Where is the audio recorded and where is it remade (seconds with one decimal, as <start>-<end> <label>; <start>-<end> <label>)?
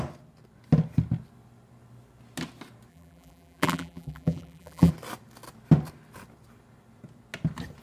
0.0-2.9 recorded; 2.9-4.9 remade; 4.9-7.8 recorded